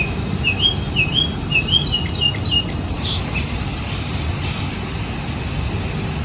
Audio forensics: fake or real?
real